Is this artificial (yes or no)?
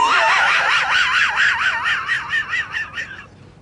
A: no